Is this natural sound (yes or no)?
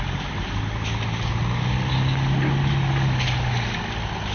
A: yes